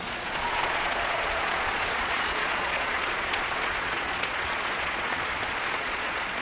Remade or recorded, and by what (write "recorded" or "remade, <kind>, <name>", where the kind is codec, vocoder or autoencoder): remade, vocoder, Vocos